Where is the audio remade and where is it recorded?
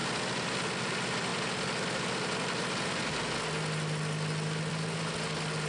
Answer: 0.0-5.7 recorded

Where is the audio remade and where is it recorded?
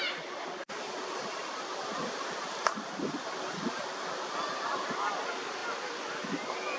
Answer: 0.0-6.8 recorded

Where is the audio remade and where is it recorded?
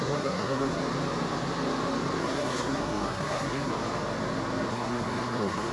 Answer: 0.0-0.8 remade; 0.8-2.2 recorded; 2.2-3.7 remade; 3.7-4.7 recorded; 4.7-5.7 remade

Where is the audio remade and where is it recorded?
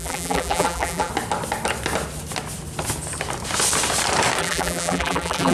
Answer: 0.0-1.1 remade; 1.1-4.4 recorded; 4.4-5.5 remade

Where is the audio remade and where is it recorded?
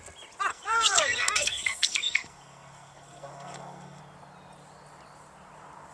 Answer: 0.0-0.5 recorded; 0.5-4.0 remade; 4.0-5.9 recorded